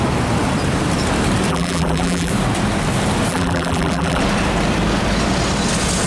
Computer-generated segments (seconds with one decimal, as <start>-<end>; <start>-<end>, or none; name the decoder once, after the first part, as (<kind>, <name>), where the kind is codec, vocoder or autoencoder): 1.5-2.3 (vocoder, BigVGAN v2); 3.3-4.2